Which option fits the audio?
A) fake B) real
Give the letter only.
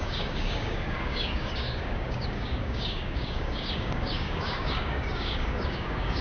A